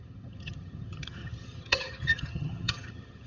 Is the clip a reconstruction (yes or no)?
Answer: yes